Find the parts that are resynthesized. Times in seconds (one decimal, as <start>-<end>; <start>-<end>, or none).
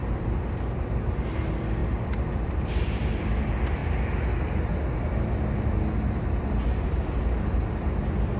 0.0-0.9; 1.8-3.2